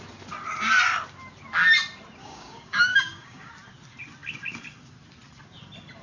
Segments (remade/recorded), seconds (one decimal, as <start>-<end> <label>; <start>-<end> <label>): 0.0-2.2 recorded; 2.2-3.5 remade; 3.5-6.0 recorded